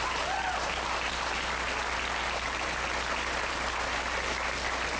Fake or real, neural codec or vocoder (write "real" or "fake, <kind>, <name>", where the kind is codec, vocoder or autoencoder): real